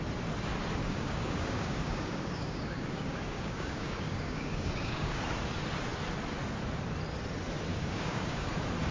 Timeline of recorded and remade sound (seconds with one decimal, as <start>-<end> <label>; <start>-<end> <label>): 0.0-0.8 recorded; 0.8-5.2 remade; 5.2-7.7 recorded; 7.7-8.5 remade; 8.5-8.9 recorded